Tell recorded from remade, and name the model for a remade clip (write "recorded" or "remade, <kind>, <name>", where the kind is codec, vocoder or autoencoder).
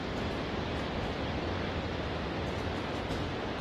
recorded